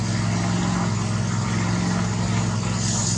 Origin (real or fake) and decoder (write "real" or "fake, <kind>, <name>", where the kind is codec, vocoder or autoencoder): real